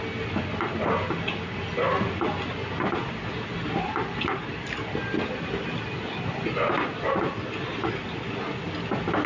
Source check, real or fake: real